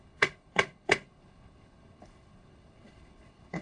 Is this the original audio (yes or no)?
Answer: no